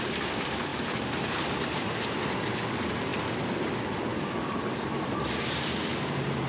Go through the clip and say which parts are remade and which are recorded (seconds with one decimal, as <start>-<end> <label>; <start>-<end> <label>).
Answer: 0.0-0.7 remade; 0.7-1.5 recorded; 1.5-3.1 remade; 3.1-3.7 recorded; 3.7-6.5 remade